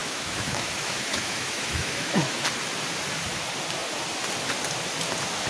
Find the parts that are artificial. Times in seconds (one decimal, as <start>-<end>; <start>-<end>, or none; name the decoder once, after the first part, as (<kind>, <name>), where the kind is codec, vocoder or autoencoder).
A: 0.0-2.4 (autoencoder, DAC-VAE)